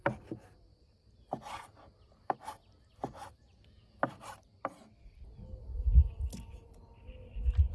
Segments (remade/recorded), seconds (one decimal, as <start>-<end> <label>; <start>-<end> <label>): 0.0-7.7 recorded